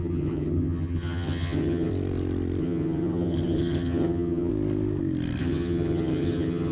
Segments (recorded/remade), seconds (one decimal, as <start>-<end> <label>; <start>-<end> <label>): 0.0-1.9 remade; 1.9-2.6 recorded; 2.6-4.5 remade; 4.5-5.4 recorded; 5.4-6.7 remade